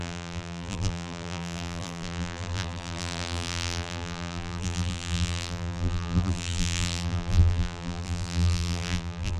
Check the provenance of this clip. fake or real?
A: fake